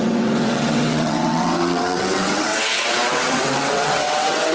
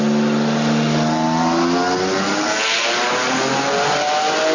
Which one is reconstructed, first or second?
first